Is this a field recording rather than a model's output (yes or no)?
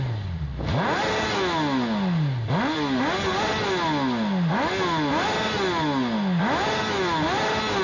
yes